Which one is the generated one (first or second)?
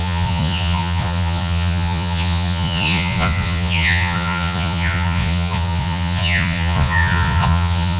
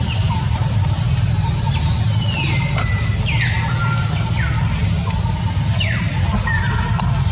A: first